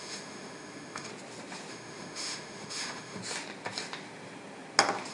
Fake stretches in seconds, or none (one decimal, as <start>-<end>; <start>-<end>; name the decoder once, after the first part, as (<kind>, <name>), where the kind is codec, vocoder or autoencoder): 0.0-1.1 (autoencoder, DAC-VAE); 1.7-3.2